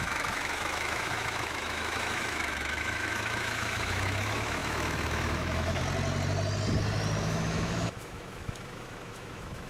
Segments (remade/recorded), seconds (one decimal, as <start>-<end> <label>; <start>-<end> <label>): 0.0-5.8 remade; 5.8-7.2 recorded; 7.2-9.7 remade